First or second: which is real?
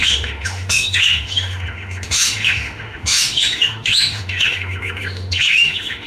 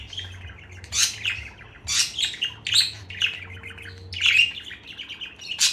second